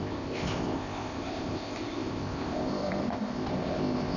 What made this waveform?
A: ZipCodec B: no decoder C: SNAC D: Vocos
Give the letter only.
A